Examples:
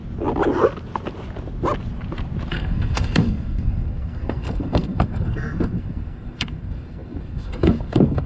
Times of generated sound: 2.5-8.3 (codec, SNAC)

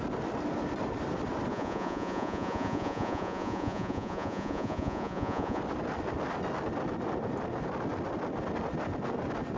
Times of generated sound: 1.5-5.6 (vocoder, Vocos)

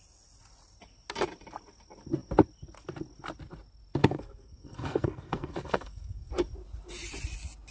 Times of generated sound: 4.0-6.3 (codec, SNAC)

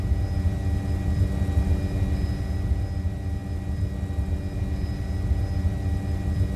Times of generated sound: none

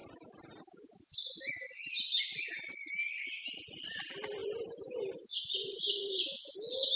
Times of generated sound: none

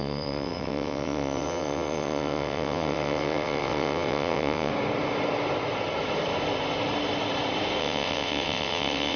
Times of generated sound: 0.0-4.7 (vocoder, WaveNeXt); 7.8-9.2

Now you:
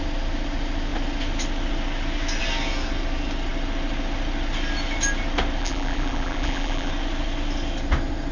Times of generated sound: 5.6-6.9 (vocoder, BigVGAN v2)